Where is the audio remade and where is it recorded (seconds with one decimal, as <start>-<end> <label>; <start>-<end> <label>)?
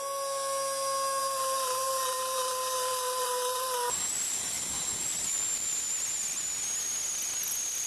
0.0-1.2 recorded; 1.2-5.9 remade; 5.9-7.9 recorded